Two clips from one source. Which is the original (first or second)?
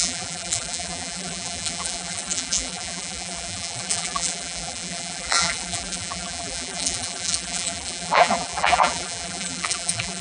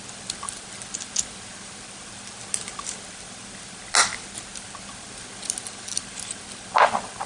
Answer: second